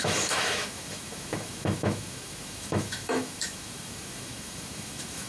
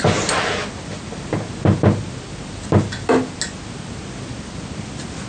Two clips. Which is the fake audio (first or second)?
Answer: first